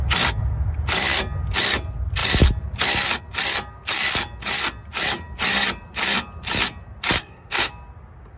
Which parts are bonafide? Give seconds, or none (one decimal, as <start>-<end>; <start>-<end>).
0.0-7.2; 7.7-8.4